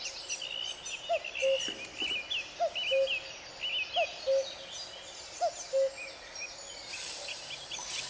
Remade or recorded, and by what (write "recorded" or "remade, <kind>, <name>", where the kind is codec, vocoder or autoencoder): recorded